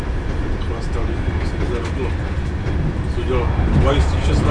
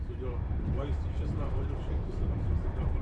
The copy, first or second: second